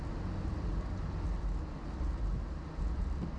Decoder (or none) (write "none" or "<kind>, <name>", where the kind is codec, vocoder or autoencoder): none